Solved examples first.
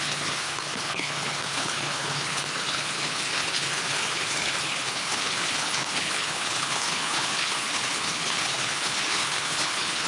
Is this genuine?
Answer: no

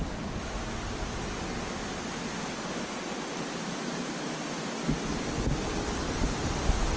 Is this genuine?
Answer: yes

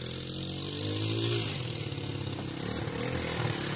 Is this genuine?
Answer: yes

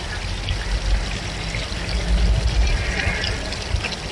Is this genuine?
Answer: yes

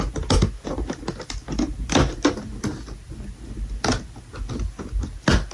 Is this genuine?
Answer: yes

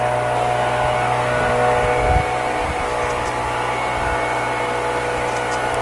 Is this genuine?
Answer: yes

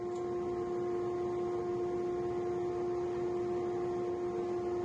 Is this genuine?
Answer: yes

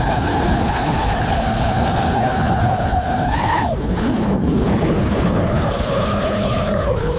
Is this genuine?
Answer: no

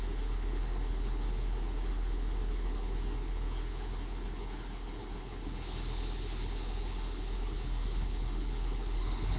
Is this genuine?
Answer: no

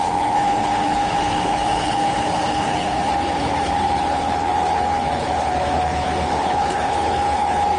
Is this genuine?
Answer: no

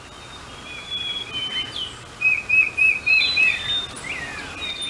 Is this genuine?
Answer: yes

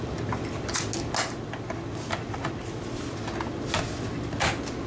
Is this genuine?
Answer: yes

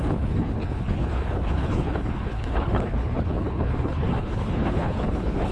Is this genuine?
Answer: no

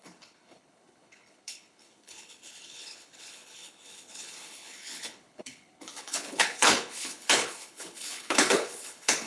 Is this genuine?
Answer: no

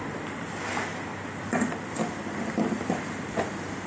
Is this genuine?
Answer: yes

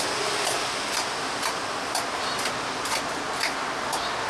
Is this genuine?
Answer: yes